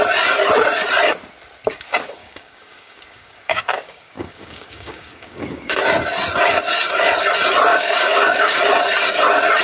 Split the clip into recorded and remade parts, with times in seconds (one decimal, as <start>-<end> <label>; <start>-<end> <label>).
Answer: 0.0-2.2 recorded; 2.2-5.8 remade; 5.8-7.7 recorded; 7.7-8.6 remade; 8.6-9.6 recorded

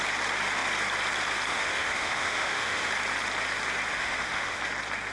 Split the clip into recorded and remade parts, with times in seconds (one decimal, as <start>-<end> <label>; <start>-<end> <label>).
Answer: 0.0-1.5 recorded; 1.5-2.9 remade; 2.9-3.9 recorded; 3.9-4.6 remade; 4.6-5.1 recorded

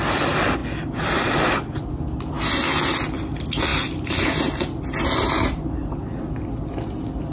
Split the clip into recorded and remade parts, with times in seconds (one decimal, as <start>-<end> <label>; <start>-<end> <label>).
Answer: 0.0-7.3 recorded

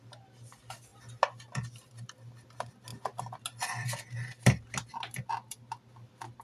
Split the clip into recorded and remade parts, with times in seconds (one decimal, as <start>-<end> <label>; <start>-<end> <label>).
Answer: 0.0-6.4 recorded

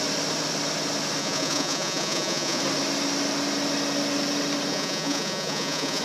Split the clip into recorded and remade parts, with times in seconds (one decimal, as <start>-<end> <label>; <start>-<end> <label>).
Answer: 0.0-1.2 recorded; 1.2-2.6 remade; 2.6-4.7 recorded; 4.7-6.0 remade